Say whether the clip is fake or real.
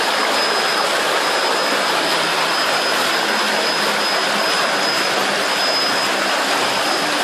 real